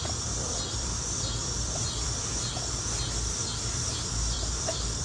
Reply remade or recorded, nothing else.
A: remade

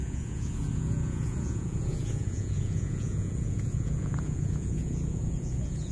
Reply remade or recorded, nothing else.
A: remade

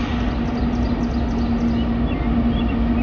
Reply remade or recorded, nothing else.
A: recorded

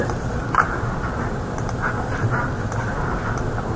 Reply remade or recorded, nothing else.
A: remade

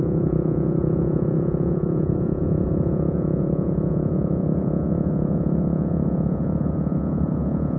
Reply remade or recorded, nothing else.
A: remade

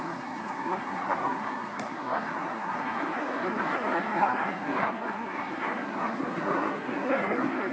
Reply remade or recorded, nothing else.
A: remade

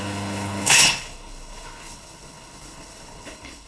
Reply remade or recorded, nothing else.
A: remade